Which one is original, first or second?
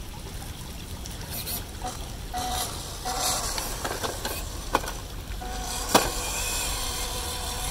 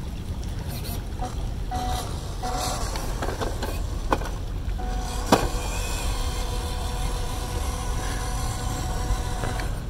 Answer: second